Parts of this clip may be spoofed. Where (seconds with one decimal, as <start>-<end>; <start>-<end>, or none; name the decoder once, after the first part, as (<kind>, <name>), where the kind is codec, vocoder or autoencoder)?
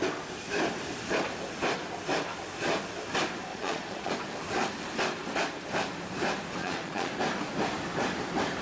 3.5-4.1 (vocoder, Vocos); 6.6-7.1